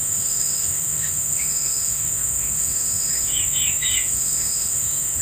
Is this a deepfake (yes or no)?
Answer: yes